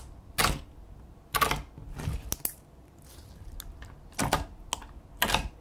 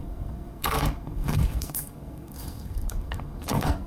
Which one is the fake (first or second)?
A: second